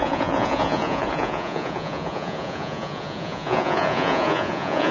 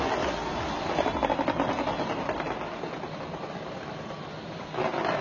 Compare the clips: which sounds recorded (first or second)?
second